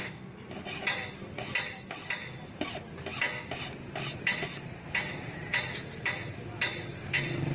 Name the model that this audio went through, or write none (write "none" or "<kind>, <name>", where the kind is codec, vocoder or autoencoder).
none